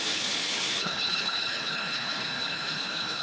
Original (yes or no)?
no